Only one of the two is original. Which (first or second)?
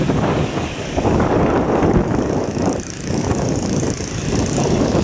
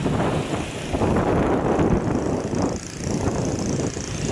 second